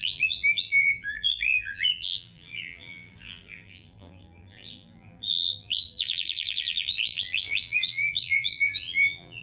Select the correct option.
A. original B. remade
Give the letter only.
B